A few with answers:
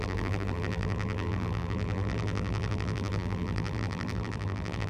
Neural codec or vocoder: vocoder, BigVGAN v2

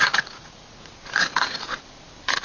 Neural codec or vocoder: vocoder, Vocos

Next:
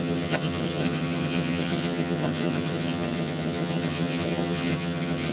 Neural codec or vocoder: vocoder, HiFi-GAN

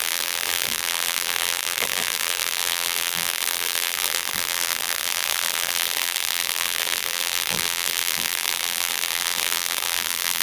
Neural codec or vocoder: vocoder, BigVGAN v2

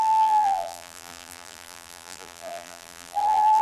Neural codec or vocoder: vocoder, BigVGAN v2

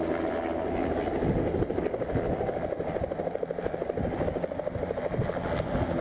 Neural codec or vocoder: none